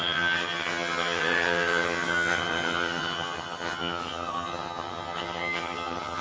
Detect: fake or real fake